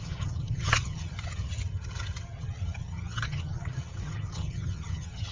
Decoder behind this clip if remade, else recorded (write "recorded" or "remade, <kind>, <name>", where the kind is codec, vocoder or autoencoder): remade, vocoder, HiFi-GAN